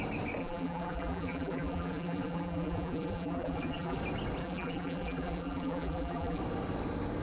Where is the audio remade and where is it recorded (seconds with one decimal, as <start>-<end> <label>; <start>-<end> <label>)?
0.0-0.4 recorded; 0.4-4.0 remade; 4.0-4.4 recorded; 4.4-6.4 remade; 6.4-7.2 recorded